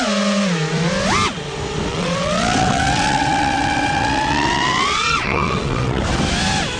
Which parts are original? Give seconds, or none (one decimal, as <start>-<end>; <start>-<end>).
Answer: 0.0-1.9; 6.0-6.8